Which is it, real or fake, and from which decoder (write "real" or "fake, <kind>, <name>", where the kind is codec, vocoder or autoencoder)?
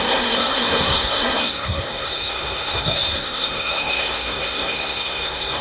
fake, codec, SNAC